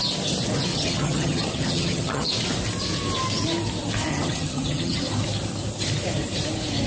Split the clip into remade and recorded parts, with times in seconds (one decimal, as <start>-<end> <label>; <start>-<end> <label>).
0.0-0.7 recorded; 0.7-2.3 remade; 2.3-4.1 recorded; 4.1-5.0 remade; 5.0-6.9 recorded

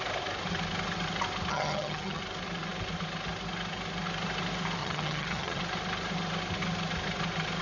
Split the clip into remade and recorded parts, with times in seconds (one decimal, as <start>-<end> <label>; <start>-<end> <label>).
0.0-1.5 recorded; 1.5-2.2 remade; 2.2-4.8 recorded; 4.8-5.6 remade; 5.6-7.6 recorded

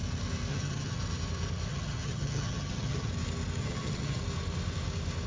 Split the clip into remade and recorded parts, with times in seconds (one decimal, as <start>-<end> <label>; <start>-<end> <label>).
0.0-0.5 recorded; 0.5-1.0 remade; 1.0-1.7 recorded; 1.7-3.1 remade; 3.1-3.6 recorded; 3.6-4.2 remade; 4.2-5.3 recorded

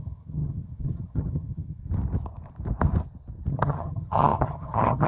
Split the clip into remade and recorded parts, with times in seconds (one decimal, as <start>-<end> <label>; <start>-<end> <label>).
0.0-1.8 remade; 1.8-3.5 recorded; 3.5-5.1 remade

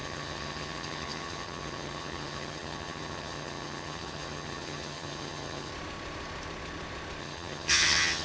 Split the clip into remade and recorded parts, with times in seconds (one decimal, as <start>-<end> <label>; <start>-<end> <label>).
0.0-5.7 remade; 5.7-7.2 recorded; 7.2-8.2 remade

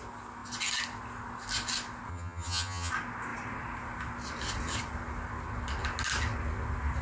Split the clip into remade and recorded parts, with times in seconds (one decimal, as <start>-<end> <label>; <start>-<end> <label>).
0.0-2.1 recorded; 2.1-2.9 remade; 2.9-7.0 recorded

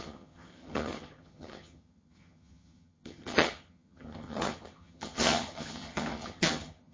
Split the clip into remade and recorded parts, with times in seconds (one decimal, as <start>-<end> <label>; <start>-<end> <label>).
0.0-6.9 remade